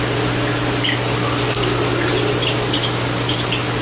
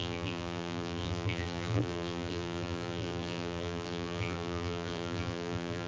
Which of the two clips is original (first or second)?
first